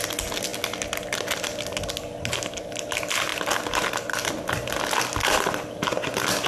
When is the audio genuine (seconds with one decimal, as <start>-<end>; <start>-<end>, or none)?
0.0-6.5